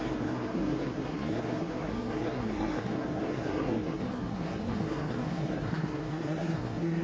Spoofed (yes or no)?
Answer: yes